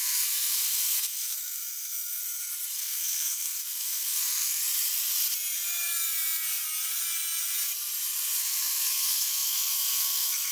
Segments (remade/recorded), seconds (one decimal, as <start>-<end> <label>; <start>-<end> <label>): 0.0-2.2 remade; 2.2-2.7 recorded; 2.7-4.6 remade; 4.6-8.4 recorded; 8.4-10.5 remade